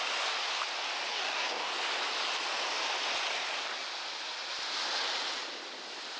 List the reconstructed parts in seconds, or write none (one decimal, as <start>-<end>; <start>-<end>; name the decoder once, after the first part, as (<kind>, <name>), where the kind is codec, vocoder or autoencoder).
1.1-1.7 (codec, DAC)